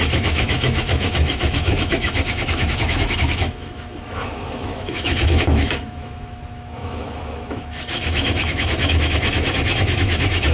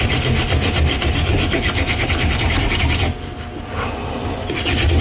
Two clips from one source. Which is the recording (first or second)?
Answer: second